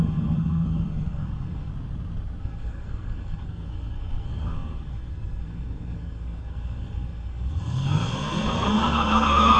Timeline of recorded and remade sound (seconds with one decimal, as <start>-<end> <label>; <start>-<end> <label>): 0.0-1.7 remade; 1.7-2.4 recorded; 2.4-9.6 remade